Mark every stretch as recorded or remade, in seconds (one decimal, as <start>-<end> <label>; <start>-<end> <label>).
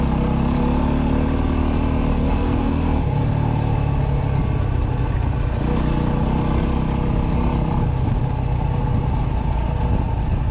0.0-2.1 recorded; 2.1-3.1 remade; 3.1-10.5 recorded